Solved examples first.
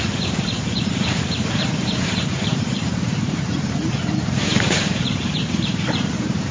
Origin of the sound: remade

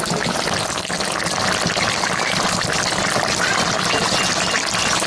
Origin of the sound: recorded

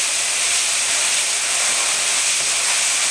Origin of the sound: recorded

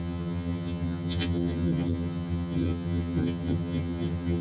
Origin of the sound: remade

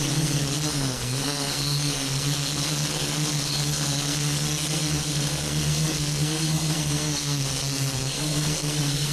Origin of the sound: remade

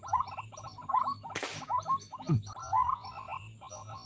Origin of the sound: recorded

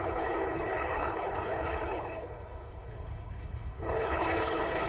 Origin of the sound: remade